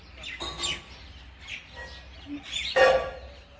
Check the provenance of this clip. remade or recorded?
recorded